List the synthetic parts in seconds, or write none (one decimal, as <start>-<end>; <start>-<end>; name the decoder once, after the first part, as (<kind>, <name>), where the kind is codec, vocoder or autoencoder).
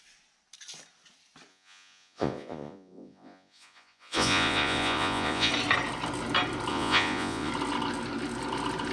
1.5-5.5 (vocoder, Vocos); 6.7-7.5